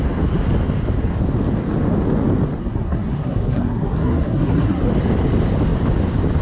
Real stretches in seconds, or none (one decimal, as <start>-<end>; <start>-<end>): 0.0-2.6; 4.9-6.4